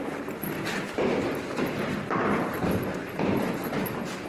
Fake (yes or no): no